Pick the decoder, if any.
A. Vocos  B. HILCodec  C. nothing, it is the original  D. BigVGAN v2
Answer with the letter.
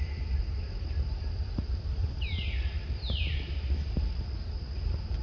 C